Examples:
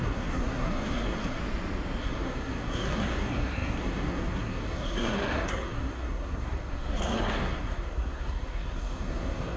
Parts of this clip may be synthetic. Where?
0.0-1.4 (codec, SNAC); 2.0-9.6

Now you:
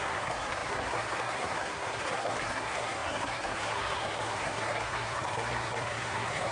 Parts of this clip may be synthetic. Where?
0.0-6.5 (codec, SNAC)

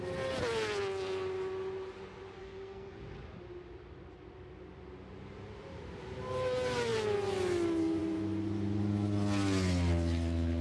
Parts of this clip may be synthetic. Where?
2.4-3.0 (codec, SNAC)